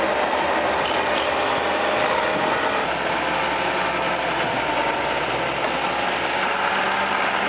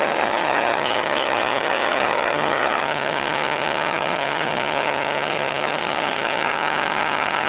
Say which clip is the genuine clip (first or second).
first